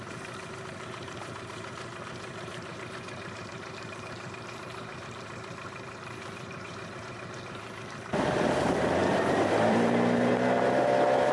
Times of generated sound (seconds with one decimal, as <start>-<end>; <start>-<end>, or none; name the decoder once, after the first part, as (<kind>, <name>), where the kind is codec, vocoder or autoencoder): 0.0-11.3 (vocoder, BigVGAN v2)